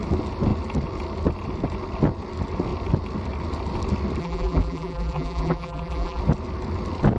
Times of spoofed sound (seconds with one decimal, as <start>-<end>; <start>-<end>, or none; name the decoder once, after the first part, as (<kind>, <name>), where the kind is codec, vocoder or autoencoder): 4.2-6.2 (vocoder, BigVGAN v2)